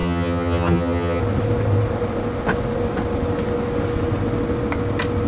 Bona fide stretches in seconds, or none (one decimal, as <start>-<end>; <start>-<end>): 1.2-5.3